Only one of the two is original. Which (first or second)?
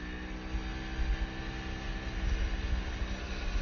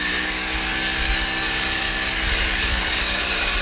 first